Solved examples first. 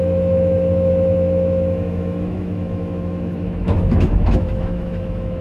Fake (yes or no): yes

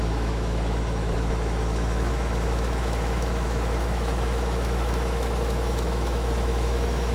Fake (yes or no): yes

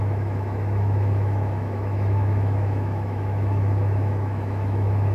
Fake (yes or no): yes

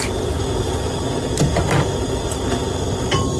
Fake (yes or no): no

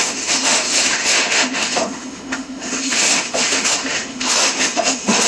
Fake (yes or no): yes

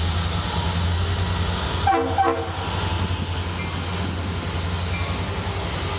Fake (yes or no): no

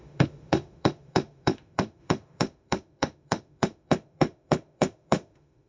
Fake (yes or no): yes